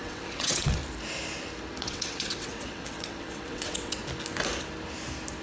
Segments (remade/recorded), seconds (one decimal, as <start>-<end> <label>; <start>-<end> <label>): 0.0-0.8 remade; 0.8-1.8 recorded; 1.8-4.0 remade; 4.0-5.4 recorded